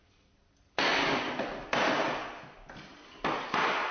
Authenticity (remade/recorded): recorded